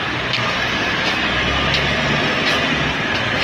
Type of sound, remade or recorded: recorded